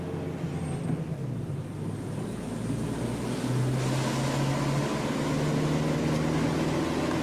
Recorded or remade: recorded